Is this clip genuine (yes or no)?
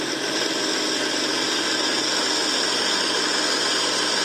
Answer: yes